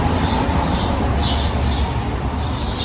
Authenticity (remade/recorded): recorded